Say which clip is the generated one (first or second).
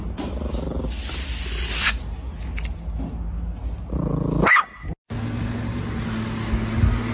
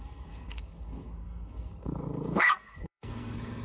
second